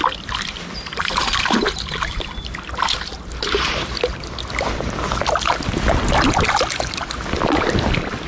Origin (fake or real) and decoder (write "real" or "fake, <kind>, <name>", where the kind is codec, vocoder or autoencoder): real